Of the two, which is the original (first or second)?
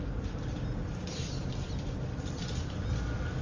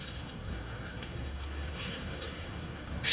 first